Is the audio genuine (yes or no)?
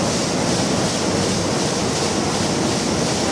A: yes